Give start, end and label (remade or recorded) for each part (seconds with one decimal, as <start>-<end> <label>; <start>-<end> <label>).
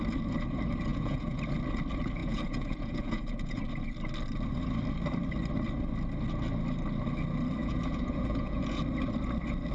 0.0-0.9 recorded; 0.9-1.4 remade; 1.4-2.2 recorded; 2.2-3.6 remade; 3.6-7.6 recorded; 7.6-8.8 remade; 8.8-9.7 recorded